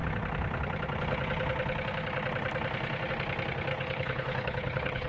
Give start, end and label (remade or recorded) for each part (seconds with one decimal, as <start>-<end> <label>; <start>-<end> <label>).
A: 0.0-3.7 recorded; 3.7-5.1 remade